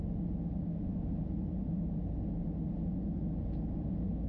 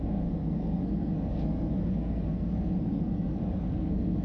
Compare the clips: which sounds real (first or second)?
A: first